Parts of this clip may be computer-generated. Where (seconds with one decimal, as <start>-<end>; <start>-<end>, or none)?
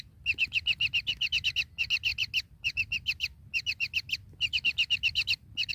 none